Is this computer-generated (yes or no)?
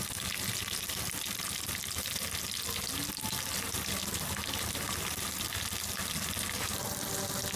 no